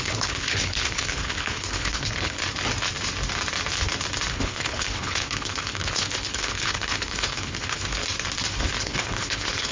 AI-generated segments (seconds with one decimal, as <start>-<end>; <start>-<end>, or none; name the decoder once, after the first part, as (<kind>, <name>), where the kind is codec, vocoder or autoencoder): 0.0-2.4 (codec, HILCodec); 4.3-8.0; 8.8-9.7